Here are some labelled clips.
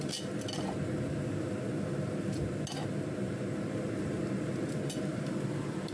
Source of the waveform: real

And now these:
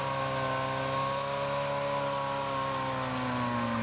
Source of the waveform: real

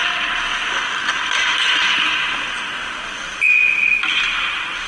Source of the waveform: real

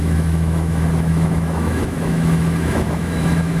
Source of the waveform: fake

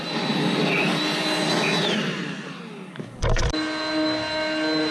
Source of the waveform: real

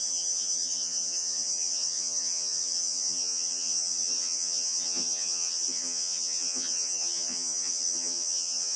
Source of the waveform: fake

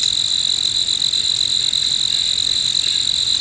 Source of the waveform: real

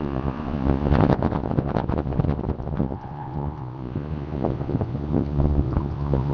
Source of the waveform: fake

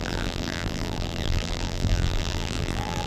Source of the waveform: fake